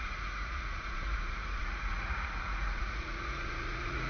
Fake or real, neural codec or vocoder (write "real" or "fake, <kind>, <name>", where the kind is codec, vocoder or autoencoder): fake, vocoder, Vocos